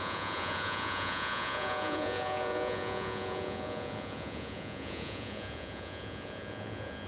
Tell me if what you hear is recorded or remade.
remade